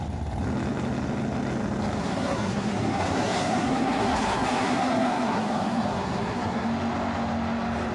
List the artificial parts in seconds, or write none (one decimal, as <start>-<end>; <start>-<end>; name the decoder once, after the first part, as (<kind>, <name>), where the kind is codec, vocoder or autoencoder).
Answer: 2.0-6.7 (codec, SNAC)